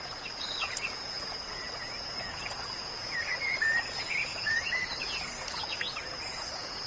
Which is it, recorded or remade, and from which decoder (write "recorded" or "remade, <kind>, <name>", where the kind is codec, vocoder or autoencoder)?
remade, vocoder, Vocos